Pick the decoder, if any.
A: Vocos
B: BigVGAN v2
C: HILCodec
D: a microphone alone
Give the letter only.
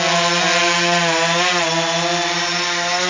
D